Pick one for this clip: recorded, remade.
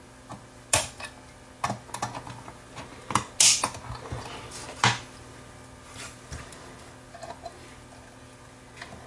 recorded